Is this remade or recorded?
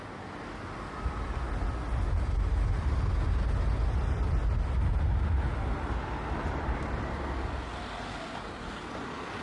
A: recorded